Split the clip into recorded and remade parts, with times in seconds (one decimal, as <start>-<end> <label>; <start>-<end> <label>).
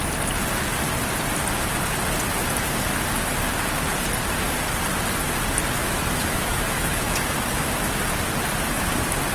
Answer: 0.0-5.8 recorded; 5.8-7.9 remade; 7.9-9.3 recorded